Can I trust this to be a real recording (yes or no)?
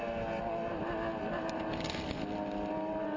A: yes